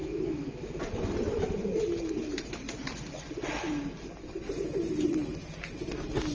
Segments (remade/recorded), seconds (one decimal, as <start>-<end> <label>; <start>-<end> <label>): 0.0-0.8 remade; 0.8-6.3 recorded